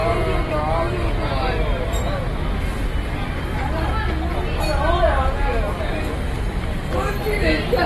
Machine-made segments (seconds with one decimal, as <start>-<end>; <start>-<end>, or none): none